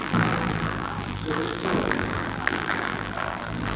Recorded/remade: remade